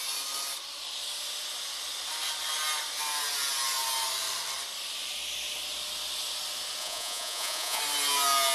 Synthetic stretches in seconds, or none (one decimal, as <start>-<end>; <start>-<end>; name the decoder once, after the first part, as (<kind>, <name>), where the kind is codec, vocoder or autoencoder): 6.8-7.8 (vocoder, Vocos)